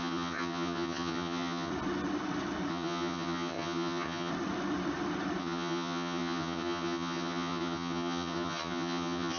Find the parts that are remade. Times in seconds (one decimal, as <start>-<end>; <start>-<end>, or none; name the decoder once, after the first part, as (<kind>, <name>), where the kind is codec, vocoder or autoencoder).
0.0-1.7 (vocoder, HiFi-GAN); 2.7-4.3; 5.4-9.4